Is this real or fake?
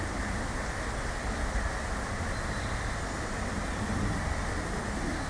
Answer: real